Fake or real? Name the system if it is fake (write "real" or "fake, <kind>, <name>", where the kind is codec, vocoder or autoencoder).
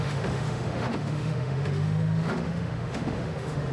fake, autoencoder, DAC-VAE